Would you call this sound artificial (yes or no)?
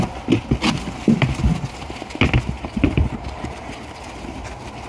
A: no